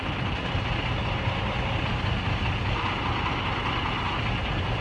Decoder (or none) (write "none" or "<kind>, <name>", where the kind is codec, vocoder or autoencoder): none